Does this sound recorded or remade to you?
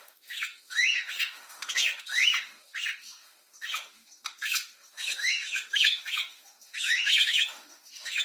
remade